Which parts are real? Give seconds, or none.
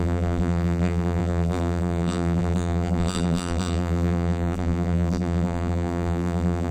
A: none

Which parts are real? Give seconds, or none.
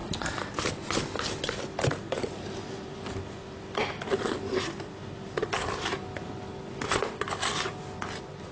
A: 0.0-8.5